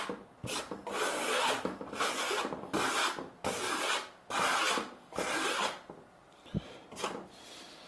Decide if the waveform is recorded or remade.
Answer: recorded